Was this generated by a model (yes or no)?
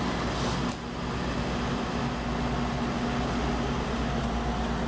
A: no